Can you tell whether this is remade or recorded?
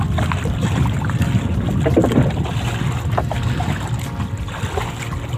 recorded